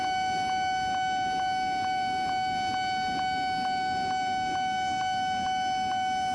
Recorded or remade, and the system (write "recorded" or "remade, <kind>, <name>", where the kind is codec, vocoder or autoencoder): recorded